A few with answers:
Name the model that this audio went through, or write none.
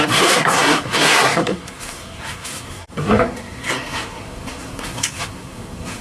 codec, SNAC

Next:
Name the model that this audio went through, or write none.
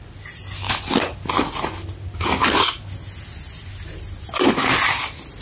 none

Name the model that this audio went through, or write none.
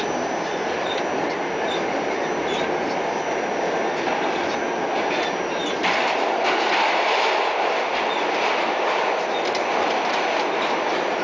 none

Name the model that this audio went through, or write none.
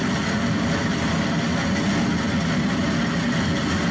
none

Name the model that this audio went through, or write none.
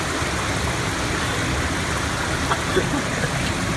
none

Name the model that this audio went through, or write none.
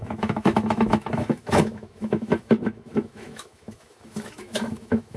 autoencoder, DAC-VAE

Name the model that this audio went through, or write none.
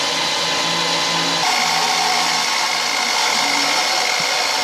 none